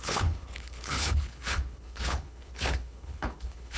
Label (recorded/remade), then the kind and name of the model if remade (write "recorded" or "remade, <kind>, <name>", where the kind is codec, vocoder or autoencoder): remade, codec, HILCodec